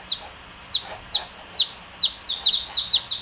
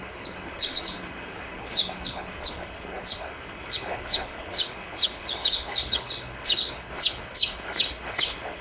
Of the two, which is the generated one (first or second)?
second